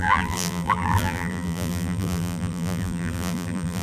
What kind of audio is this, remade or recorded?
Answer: remade